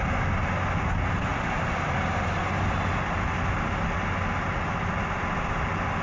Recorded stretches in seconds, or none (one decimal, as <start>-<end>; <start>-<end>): 0.0-1.3; 1.9-6.0